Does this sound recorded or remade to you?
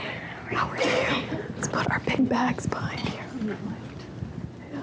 recorded